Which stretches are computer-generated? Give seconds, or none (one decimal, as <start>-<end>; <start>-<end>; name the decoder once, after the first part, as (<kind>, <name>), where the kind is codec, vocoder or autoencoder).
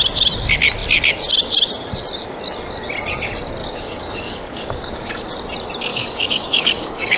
3.6-5.1 (codec, DAC); 5.9-7.2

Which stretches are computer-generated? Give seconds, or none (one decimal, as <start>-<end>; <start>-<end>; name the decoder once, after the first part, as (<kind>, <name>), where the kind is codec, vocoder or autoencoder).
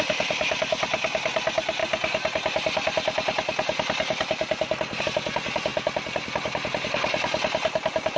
none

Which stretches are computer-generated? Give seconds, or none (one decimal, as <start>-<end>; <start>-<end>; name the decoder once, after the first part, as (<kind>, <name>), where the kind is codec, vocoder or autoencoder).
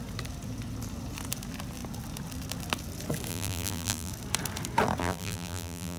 3.3-4.1 (vocoder, BigVGAN v2); 5.0-6.0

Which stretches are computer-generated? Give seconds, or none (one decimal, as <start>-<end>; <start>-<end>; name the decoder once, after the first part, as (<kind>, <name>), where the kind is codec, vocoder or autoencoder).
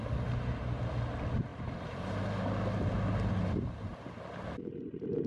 1.5-2.2 (vocoder, BigVGAN v2)